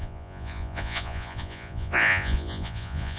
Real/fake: fake